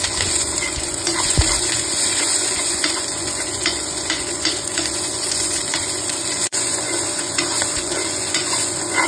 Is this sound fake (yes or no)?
yes